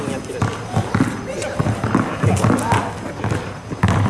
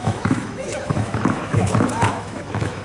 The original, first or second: first